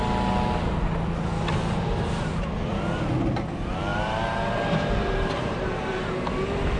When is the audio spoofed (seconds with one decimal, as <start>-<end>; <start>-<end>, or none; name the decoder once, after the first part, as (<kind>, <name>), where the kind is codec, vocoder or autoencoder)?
3.9-6.0 (vocoder, BigVGAN v2)